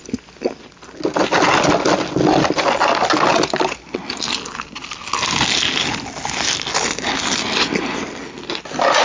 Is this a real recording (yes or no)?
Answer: yes